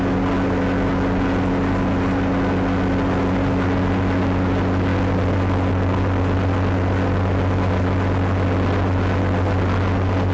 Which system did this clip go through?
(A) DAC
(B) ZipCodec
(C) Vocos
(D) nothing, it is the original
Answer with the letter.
D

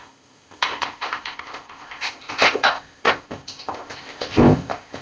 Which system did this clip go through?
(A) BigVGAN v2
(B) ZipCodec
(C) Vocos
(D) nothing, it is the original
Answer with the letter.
B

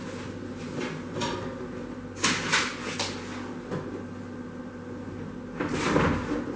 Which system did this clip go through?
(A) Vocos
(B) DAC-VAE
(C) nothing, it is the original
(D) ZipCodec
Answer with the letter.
C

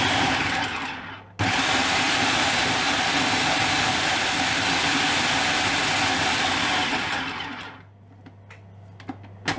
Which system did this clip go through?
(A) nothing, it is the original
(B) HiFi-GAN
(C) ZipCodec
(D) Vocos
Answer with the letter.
A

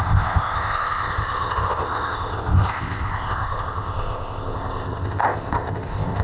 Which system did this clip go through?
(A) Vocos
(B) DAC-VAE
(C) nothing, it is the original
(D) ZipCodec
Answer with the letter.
D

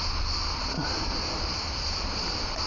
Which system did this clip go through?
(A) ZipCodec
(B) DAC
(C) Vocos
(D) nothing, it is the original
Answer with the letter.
D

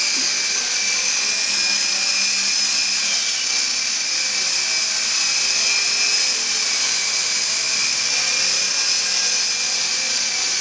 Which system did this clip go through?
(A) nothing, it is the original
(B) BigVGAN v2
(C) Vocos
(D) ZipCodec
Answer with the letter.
A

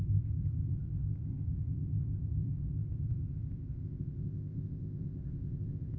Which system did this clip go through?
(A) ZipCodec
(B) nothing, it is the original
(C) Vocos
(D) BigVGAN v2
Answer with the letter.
A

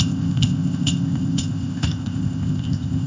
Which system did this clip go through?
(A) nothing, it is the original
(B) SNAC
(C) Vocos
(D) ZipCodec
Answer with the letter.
D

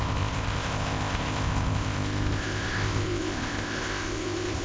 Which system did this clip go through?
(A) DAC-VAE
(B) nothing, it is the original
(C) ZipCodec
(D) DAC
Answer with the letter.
C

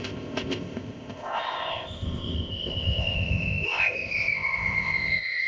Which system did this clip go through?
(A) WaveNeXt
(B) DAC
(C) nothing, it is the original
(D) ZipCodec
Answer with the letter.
D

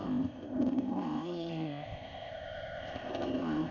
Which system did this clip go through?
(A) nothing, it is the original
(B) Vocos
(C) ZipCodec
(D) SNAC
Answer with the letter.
C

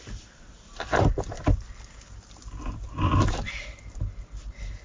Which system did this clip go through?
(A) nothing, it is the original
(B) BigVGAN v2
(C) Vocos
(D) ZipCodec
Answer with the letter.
A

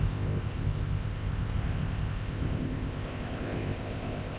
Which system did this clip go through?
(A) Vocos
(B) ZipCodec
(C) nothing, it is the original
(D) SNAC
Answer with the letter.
B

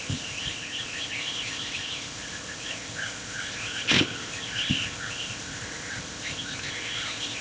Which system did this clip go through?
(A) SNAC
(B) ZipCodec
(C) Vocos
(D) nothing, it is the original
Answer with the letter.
B